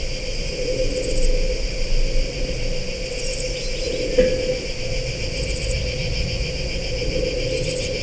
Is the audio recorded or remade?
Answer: recorded